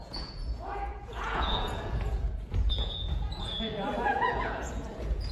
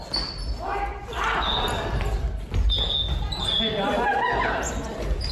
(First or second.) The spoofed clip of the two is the first